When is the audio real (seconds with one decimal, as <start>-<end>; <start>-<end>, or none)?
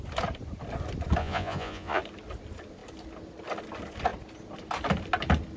0.0-1.2; 2.0-5.6